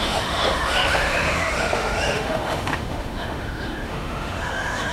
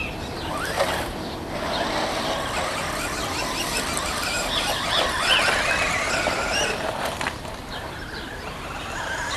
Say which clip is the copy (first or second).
first